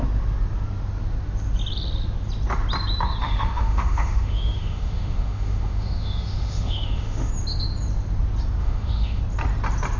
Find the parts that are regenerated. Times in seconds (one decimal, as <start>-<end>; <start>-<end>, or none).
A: 3.2-7.3; 8.6-9.2